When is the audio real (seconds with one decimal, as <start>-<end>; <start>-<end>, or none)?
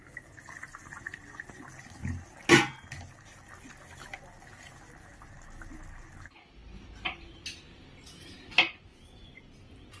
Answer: 0.0-8.9; 9.4-10.0